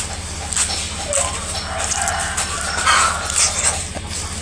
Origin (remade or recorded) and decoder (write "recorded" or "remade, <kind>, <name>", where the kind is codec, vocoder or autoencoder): recorded